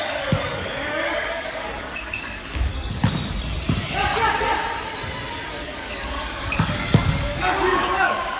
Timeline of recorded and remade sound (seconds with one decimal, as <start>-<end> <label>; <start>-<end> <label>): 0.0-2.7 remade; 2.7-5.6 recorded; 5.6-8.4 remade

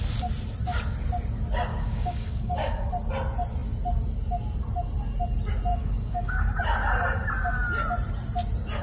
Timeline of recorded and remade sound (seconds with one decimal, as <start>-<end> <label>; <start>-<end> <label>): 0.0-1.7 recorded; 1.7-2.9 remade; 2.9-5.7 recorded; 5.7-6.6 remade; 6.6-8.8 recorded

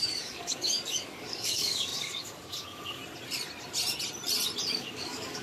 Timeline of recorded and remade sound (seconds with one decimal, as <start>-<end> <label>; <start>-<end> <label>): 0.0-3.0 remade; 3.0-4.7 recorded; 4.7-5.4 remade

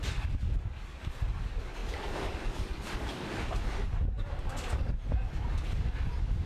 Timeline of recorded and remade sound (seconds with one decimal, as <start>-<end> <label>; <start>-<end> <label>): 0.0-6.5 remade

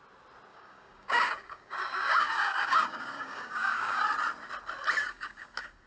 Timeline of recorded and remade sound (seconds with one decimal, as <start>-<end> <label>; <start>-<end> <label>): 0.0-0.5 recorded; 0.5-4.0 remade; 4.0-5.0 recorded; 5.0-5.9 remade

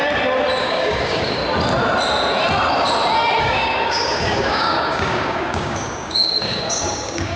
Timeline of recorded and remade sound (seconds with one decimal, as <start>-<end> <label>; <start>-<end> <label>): 0.0-0.6 recorded; 0.6-1.4 remade; 1.4-3.4 recorded; 3.4-7.4 remade

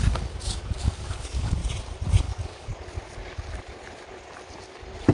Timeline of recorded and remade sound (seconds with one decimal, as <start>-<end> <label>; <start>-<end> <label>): 0.0-1.6 remade; 1.6-2.2 recorded; 2.2-2.7 remade; 2.7-5.1 recorded

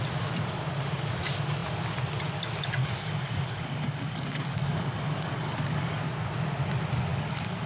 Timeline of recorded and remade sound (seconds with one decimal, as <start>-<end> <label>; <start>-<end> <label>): 0.0-2.8 recorded; 2.8-6.1 remade; 6.1-7.1 recorded; 7.1-7.7 remade